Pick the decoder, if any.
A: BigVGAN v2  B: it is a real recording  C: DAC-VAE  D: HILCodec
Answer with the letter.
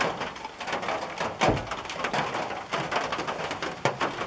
B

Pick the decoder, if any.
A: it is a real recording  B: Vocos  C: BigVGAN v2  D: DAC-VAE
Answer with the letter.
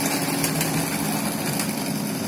A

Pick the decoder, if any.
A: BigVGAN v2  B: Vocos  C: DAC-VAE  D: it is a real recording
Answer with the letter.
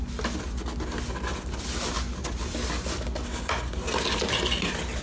D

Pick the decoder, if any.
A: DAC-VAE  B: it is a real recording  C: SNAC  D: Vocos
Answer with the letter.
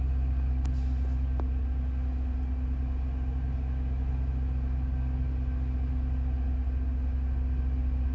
B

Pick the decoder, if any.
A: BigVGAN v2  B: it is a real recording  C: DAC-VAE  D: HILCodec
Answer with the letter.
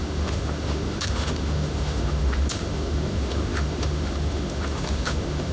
C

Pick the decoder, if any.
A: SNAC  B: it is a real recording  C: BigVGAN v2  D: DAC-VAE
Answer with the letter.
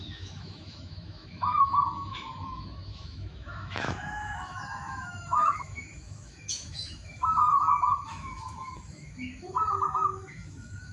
D